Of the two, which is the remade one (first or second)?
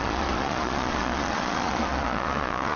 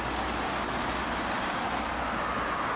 first